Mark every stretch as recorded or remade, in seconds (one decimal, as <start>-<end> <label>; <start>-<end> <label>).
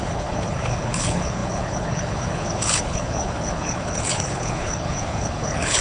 0.0-5.8 remade